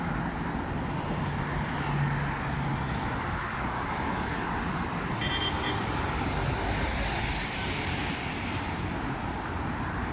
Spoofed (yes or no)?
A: no